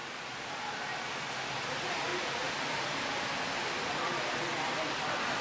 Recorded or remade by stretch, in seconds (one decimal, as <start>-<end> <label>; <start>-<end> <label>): 0.0-2.1 recorded; 2.1-2.6 remade; 2.6-5.4 recorded